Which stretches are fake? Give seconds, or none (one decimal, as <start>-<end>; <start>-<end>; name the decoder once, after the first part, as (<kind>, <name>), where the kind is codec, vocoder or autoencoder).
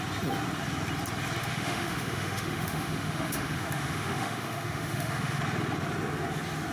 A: 1.4-5.4 (autoencoder, DAC-VAE)